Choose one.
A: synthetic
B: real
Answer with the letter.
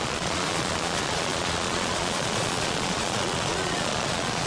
A